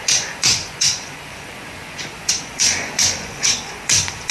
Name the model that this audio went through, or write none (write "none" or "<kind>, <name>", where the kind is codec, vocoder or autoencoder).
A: vocoder, Vocos